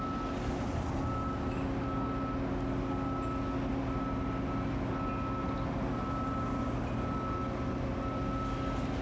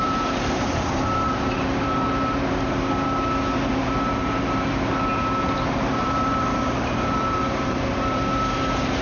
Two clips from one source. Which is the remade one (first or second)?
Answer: second